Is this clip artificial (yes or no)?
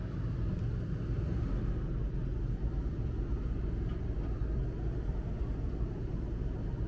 no